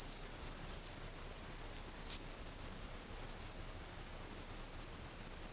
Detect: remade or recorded recorded